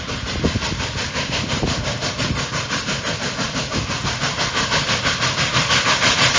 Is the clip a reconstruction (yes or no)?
no